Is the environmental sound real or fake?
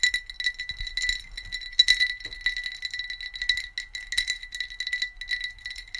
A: real